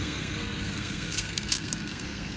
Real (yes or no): no